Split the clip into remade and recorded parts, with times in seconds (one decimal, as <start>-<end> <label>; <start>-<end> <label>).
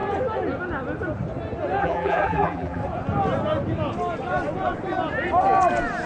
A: 0.0-1.8 recorded; 1.8-2.8 remade; 2.8-6.1 recorded